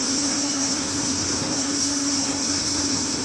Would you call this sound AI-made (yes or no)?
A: yes